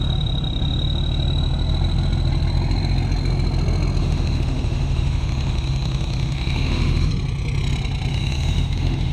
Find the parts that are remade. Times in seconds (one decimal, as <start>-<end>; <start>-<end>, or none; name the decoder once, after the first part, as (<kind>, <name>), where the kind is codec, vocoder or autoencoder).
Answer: 4.0-7.1 (autoencoder, DAC-VAE); 8.1-9.1